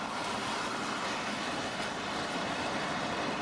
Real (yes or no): yes